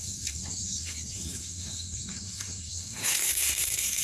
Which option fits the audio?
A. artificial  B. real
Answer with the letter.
A